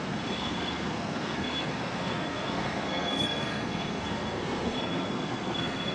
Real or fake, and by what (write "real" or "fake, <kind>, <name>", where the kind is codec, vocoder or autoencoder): fake, codec, SNAC